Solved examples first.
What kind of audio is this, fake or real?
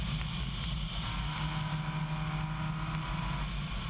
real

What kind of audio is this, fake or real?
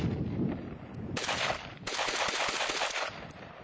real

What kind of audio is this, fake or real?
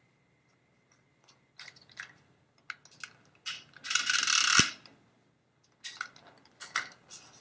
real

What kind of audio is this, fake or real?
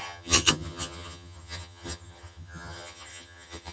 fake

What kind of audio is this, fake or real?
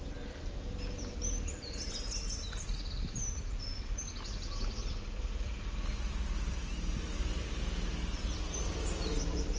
fake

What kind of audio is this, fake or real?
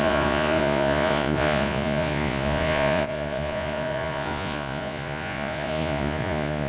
fake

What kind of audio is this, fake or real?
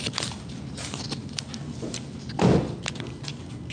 real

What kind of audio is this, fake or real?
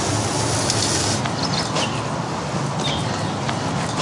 real